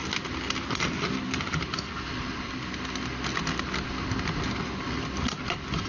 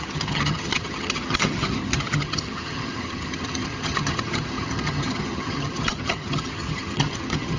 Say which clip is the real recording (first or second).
first